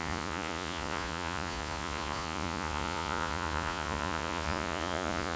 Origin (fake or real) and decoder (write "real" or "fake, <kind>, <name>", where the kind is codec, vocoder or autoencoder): fake, vocoder, Vocos